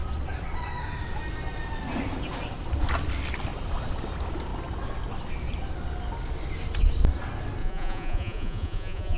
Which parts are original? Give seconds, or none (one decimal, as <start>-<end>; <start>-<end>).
0.0-7.6